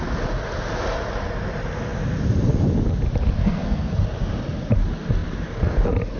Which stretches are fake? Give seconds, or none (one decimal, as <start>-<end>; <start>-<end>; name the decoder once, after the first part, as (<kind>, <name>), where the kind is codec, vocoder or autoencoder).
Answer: 3.4-4.0 (codec, SNAC)